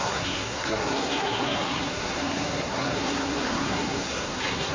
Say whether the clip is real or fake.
fake